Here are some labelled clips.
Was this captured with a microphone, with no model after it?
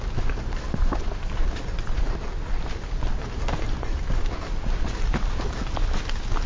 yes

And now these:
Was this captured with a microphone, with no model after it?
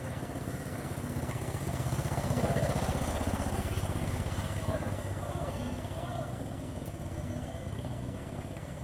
no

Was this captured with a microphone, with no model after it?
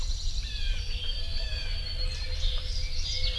yes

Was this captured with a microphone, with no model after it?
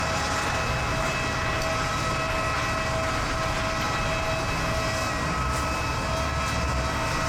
yes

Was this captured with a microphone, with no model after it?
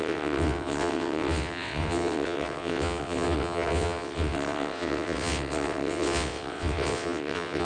no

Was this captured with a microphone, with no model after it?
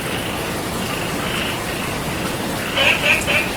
yes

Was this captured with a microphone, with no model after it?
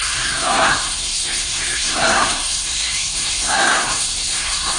no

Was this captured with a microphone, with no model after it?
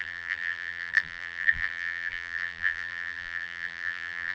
no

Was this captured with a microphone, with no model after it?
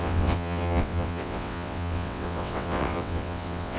no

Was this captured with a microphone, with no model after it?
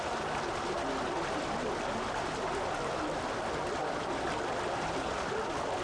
yes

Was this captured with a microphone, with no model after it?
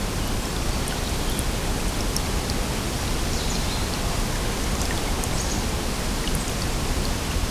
yes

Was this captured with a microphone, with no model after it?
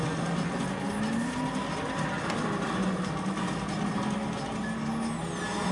yes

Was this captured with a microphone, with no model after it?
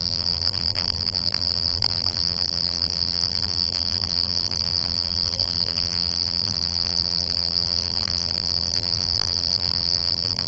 no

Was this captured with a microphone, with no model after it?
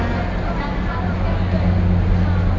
yes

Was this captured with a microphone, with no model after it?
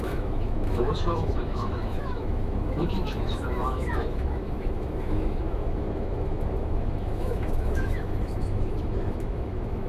no